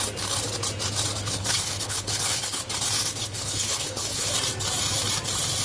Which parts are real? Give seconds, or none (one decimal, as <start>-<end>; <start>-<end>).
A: 0.0-1.2; 2.6-3.2; 4.3-5.6